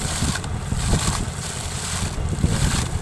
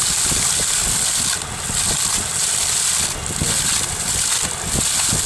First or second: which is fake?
first